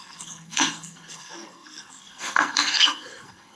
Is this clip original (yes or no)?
no